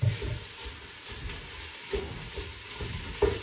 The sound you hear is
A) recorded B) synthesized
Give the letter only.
A